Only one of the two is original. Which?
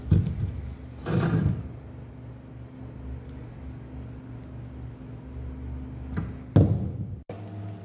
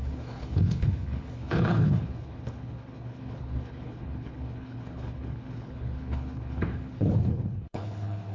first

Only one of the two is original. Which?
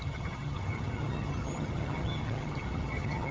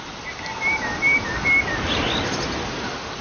second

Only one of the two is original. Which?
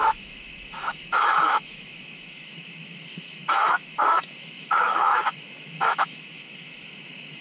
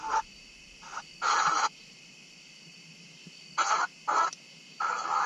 second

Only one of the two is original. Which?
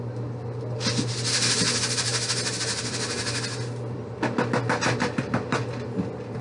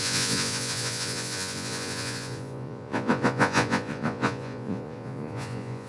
first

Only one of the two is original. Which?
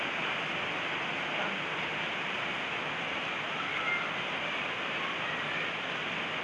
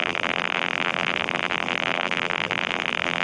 first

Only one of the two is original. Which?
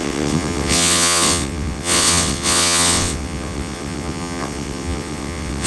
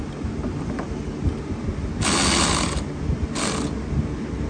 second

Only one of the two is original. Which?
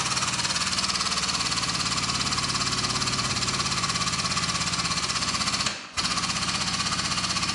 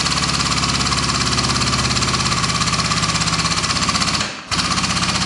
second